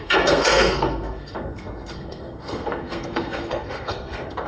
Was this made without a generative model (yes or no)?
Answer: no